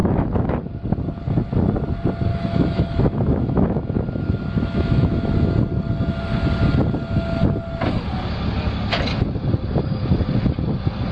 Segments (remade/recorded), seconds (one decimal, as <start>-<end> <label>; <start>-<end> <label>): 0.0-0.6 remade; 0.6-2.3 recorded; 2.3-5.5 remade; 5.5-11.1 recorded